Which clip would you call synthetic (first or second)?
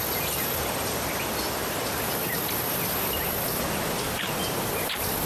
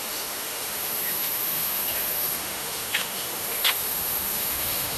second